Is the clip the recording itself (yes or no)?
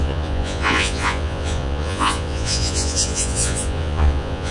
no